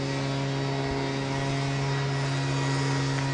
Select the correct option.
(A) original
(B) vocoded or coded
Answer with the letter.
A